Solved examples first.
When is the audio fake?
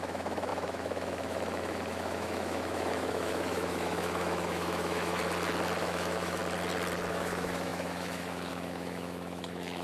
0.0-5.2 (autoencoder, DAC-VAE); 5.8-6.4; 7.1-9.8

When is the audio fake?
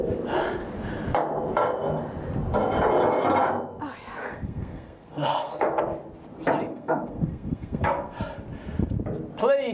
4.2-5.8 (codec, SNAC); 6.7-8.2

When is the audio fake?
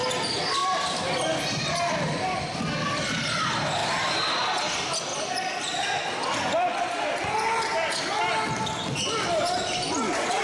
0.6-1.4 (vocoder, BigVGAN v2); 5.1-7.3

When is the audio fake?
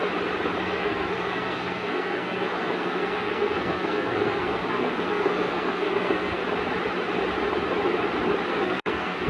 0.6-6.4 (codec, SNAC); 8.5-9.3